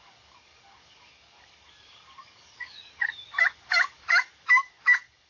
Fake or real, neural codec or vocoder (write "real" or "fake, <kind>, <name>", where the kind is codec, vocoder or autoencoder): fake, codec, DAC